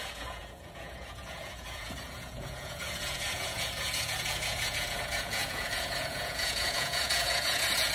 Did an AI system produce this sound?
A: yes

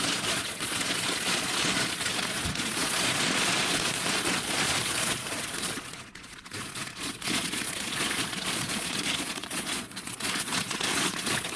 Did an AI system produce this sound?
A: yes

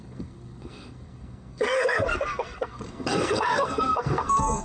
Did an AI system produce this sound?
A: yes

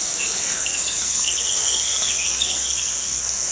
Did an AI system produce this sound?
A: yes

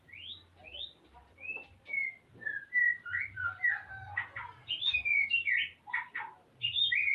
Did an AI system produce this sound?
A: no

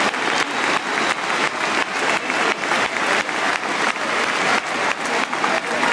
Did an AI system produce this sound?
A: no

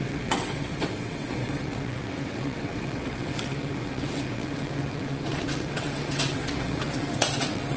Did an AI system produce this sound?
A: yes